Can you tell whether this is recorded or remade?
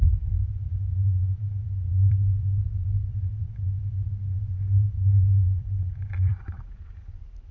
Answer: remade